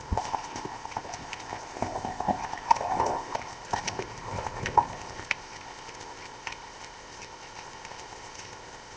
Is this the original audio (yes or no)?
no